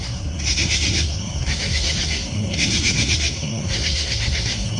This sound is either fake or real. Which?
fake